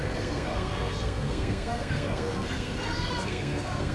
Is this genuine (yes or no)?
no